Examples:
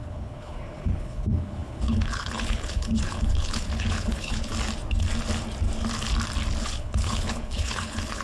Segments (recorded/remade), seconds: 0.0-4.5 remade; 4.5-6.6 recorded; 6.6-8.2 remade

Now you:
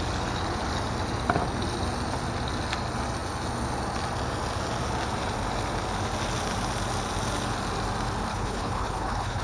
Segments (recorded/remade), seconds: 0.0-8.3 recorded; 8.3-9.4 remade

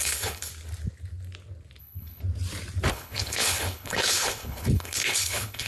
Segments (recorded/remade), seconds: 0.0-0.5 remade; 0.5-1.8 recorded; 1.8-2.2 remade; 2.2-2.9 recorded; 2.9-5.7 remade